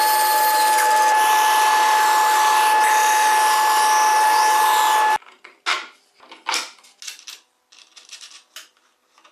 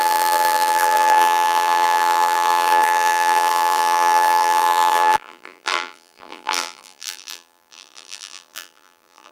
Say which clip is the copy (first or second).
second